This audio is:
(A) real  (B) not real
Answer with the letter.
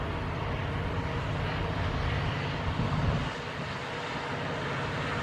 A